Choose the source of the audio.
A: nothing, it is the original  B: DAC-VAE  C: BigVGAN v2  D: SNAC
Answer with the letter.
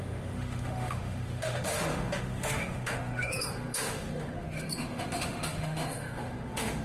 B